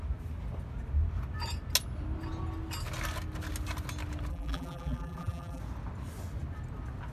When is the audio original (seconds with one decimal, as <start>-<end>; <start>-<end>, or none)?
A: 0.0-4.3; 5.6-7.1